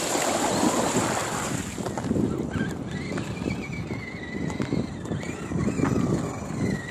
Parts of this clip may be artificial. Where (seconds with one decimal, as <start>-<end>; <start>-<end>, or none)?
0.0-1.2; 4.2-6.9